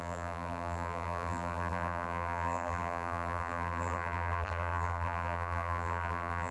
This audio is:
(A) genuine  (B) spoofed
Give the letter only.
B